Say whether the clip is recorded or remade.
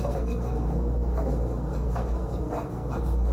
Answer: remade